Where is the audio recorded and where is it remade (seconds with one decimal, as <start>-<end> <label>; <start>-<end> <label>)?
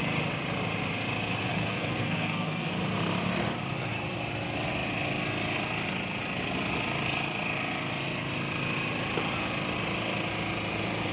0.0-1.5 recorded; 1.5-2.7 remade; 2.7-11.1 recorded